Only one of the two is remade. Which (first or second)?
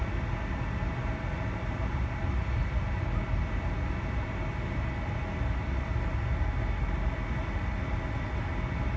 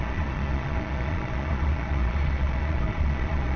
second